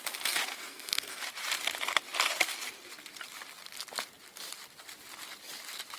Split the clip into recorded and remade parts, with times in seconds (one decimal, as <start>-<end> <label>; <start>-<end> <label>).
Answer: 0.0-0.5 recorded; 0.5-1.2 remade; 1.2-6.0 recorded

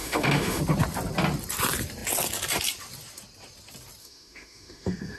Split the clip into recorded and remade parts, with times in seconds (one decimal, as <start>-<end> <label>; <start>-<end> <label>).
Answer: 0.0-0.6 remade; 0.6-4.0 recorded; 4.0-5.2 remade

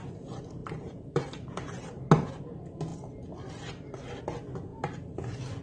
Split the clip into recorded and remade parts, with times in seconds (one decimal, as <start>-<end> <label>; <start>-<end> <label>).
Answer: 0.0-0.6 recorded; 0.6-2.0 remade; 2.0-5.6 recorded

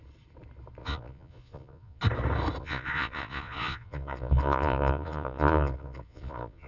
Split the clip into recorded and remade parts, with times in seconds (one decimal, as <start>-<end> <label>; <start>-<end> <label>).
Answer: 0.0-0.8 recorded; 0.8-2.0 remade; 2.0-2.6 recorded; 2.6-6.7 remade

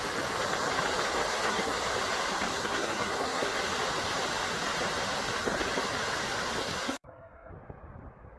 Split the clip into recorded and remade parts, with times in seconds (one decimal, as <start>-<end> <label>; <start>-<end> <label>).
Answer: 0.0-1.3 recorded; 1.3-1.8 remade; 1.8-2.5 recorded; 2.5-3.6 remade; 3.6-6.6 recorded; 6.6-7.5 remade; 7.5-8.4 recorded

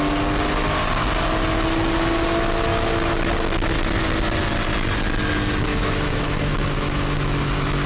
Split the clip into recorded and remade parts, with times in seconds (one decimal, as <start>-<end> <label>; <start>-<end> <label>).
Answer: 0.0-5.7 recorded; 5.7-7.9 remade

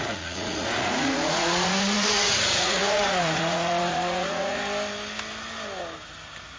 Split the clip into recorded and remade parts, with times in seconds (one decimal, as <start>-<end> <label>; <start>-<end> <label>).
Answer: 0.0-4.6 remade; 4.6-6.6 recorded

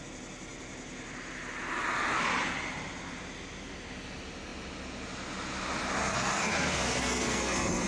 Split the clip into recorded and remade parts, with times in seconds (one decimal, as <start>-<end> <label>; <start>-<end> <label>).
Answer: 0.0-6.0 recorded; 6.0-7.9 remade